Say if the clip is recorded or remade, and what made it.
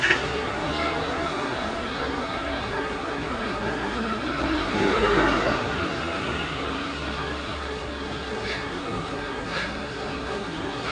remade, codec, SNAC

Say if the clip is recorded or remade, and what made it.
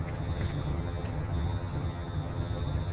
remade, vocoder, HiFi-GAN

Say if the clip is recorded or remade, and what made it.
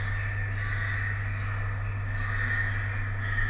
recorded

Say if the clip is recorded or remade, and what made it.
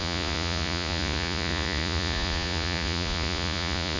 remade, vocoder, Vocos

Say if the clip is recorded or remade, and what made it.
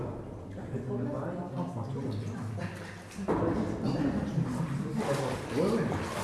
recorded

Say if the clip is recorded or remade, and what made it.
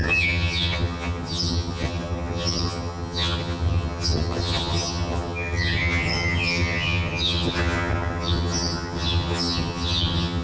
remade, vocoder, HiFi-GAN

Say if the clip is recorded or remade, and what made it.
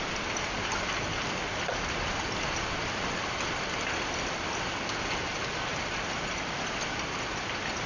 recorded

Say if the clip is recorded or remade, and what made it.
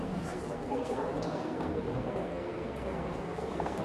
remade, codec, SNAC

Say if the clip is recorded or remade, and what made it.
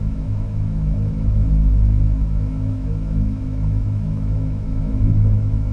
remade, autoencoder, DAC-VAE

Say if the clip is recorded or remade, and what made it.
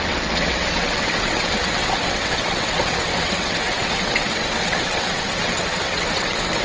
remade, vocoder, WaveNeXt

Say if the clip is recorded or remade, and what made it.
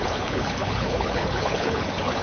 remade, codec, HILCodec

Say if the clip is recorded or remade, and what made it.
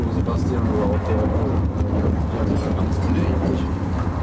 recorded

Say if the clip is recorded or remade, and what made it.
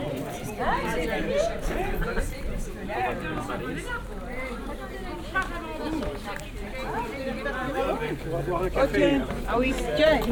remade, vocoder, BigVGAN v2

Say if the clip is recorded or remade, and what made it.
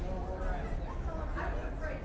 recorded